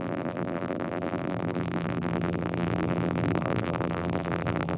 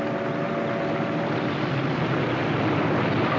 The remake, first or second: first